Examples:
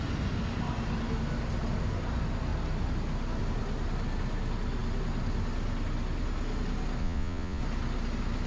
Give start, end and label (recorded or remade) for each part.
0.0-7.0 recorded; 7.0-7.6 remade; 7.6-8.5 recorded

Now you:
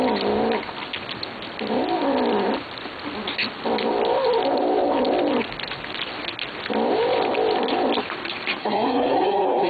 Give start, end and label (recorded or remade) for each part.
0.0-8.6 recorded; 8.6-9.7 remade

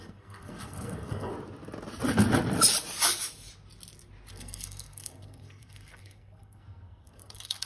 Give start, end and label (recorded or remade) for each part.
0.0-1.3 remade; 1.3-4.3 recorded; 4.3-7.7 remade

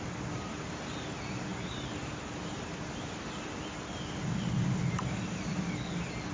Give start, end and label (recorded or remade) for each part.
0.0-6.3 recorded

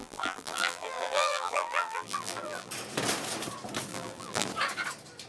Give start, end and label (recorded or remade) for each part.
0.0-2.7 remade; 2.7-3.9 recorded; 3.9-4.5 remade; 4.5-5.3 recorded

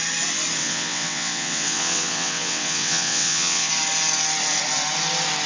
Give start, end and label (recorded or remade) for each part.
0.0-0.6 recorded; 0.6-3.7 remade; 3.7-5.5 recorded